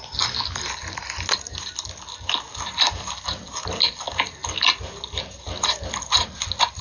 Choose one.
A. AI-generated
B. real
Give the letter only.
B